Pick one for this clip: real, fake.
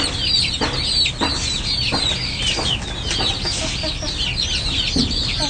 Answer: real